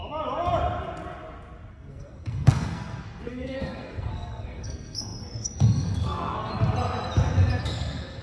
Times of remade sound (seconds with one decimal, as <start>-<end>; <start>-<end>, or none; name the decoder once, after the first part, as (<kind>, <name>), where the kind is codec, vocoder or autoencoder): 1.7-6.5 (codec, SNAC); 7.6-8.2